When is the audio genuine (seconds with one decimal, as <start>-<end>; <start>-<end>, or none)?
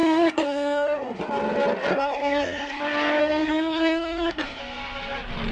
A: 1.2-1.9; 2.8-3.2; 4.6-5.5